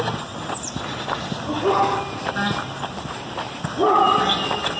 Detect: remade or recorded recorded